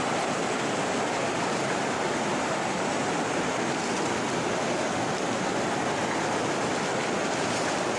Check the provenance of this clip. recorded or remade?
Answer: recorded